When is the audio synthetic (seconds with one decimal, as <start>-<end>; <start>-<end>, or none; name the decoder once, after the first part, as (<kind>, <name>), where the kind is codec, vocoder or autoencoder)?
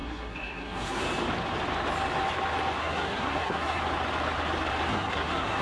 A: 0.0-1.0 (codec, SNAC); 2.8-3.8; 4.9-5.6